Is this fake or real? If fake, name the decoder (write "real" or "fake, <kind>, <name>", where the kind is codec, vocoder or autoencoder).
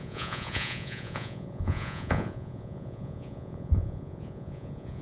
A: fake, vocoder, Vocos